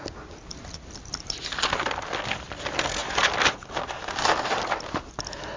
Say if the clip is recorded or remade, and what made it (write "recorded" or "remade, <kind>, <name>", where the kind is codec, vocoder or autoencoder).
recorded